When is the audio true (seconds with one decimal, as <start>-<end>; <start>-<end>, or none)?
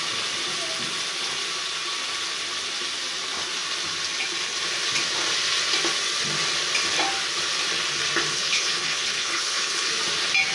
0.0-8.3; 9.9-10.5